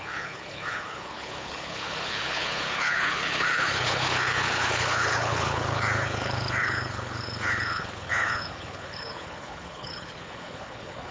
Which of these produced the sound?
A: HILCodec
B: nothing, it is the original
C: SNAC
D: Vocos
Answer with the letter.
A